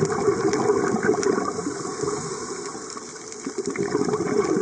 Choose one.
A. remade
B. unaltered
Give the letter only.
B